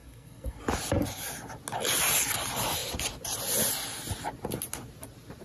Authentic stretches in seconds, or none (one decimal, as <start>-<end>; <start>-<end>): 0.6-5.4